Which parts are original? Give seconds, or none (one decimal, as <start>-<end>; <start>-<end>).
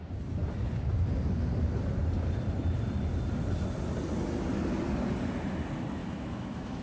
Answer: 0.0-6.0